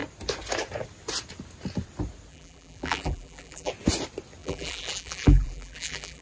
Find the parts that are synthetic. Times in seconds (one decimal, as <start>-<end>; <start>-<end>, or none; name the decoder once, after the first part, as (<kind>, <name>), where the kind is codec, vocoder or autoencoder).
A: 2.3-3.7 (vocoder, BigVGAN v2); 4.4-6.2